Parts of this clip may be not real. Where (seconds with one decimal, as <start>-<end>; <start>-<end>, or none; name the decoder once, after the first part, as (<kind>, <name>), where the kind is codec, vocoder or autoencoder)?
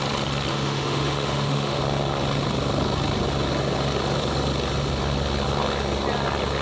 0.5-1.8 (autoencoder, DAC-VAE)